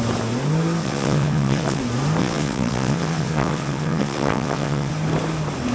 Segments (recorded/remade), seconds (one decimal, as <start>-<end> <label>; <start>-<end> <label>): 0.0-0.8 recorded; 0.8-1.8 remade; 1.8-2.2 recorded; 2.2-4.9 remade; 4.9-5.7 recorded